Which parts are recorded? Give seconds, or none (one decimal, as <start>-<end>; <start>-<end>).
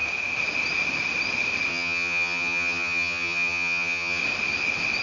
0.0-1.7; 4.2-5.0